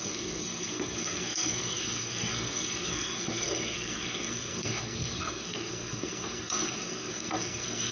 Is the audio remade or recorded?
remade